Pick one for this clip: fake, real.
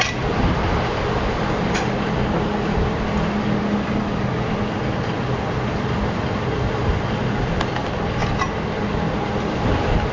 real